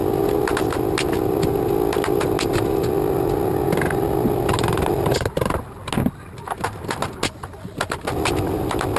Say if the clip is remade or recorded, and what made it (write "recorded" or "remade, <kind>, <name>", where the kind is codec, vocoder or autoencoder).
recorded